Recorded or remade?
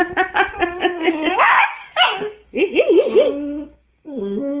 remade